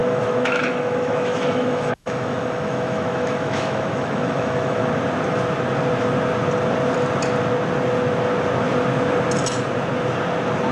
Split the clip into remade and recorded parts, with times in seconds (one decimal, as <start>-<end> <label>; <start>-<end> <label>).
0.0-4.8 remade; 4.8-10.7 recorded